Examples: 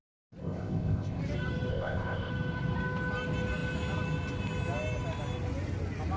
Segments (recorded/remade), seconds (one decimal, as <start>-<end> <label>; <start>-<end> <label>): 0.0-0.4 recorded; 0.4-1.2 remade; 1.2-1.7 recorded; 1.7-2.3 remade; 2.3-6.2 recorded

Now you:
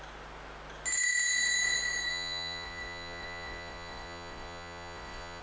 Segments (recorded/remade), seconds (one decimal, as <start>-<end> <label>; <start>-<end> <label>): 0.0-2.1 recorded; 2.1-5.4 remade

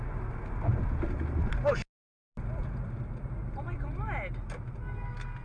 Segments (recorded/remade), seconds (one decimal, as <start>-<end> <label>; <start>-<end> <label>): 0.0-5.4 recorded

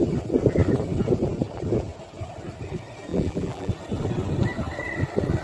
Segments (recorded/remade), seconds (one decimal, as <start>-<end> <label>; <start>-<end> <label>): 0.0-3.1 recorded; 3.1-3.7 remade; 3.7-5.4 recorded

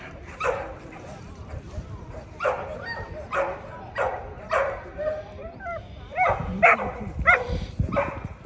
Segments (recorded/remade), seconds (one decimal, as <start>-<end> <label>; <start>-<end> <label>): 0.0-1.4 remade; 1.4-2.2 recorded; 2.2-2.7 remade; 2.7-4.4 recorded; 4.4-8.5 remade

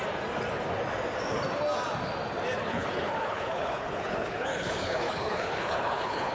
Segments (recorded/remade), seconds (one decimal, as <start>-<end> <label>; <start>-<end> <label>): 0.0-2.6 recorded; 2.6-6.3 remade

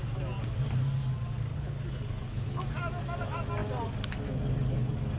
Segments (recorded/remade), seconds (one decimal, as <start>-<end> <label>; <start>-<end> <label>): 0.0-1.5 recorded; 1.5-2.6 remade; 2.6-5.2 recorded